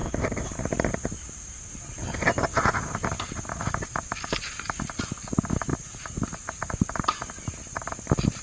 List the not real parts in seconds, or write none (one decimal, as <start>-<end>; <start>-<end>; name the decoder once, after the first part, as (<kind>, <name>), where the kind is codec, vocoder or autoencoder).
5.7-6.8 (vocoder, BigVGAN v2)